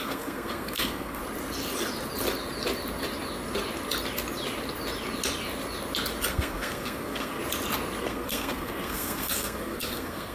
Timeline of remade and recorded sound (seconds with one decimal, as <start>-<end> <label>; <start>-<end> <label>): 0.0-1.2 remade; 1.2-6.3 recorded; 6.3-7.4 remade; 7.4-8.0 recorded; 8.0-10.3 remade